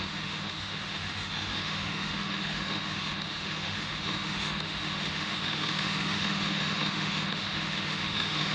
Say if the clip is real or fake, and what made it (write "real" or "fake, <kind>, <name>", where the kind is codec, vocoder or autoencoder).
fake, autoencoder, DAC-VAE